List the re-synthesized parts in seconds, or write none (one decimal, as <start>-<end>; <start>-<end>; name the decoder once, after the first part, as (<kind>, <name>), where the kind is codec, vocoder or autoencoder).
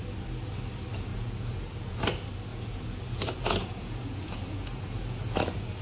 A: 1.1-2.0 (vocoder, Vocos); 2.5-5.8